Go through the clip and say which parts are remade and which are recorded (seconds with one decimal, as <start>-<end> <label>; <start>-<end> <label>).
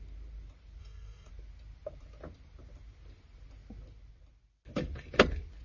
0.0-0.8 recorded; 0.8-1.3 remade; 1.3-5.6 recorded